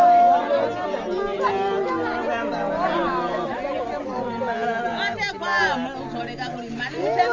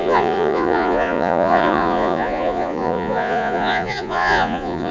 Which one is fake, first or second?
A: second